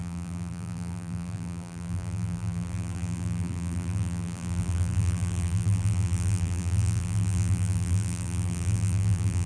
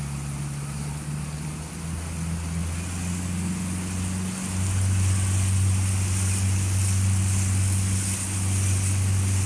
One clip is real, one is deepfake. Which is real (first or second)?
second